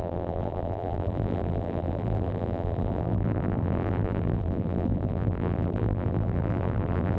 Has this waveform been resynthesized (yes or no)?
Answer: yes